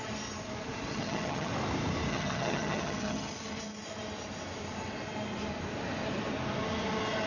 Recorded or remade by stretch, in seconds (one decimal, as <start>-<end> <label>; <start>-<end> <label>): 0.0-0.9 recorded; 0.9-1.5 remade; 1.5-2.1 recorded; 2.1-3.3 remade; 3.3-7.3 recorded